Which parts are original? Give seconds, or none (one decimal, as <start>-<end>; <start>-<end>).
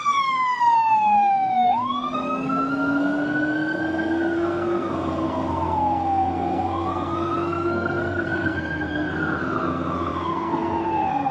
none